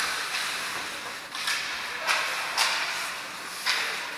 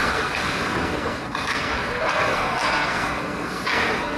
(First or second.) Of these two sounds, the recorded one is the first